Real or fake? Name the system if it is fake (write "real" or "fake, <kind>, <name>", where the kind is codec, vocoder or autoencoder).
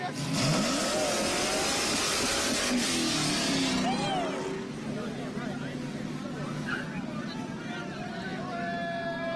real